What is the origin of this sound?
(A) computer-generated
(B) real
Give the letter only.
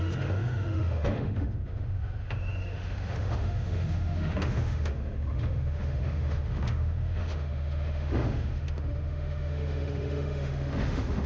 A